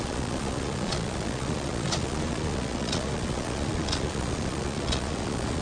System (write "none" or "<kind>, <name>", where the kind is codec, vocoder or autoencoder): vocoder, Vocos